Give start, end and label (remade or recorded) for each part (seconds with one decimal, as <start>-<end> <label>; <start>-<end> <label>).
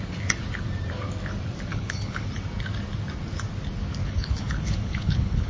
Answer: 0.0-1.7 recorded; 1.7-2.3 remade; 2.3-4.0 recorded; 4.0-5.5 remade